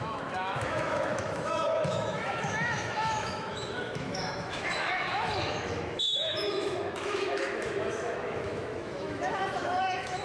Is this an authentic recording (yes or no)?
no